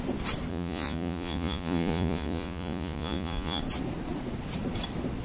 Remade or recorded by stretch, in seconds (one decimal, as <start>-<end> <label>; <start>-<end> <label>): 0.0-0.5 recorded; 0.5-3.6 remade; 3.6-5.2 recorded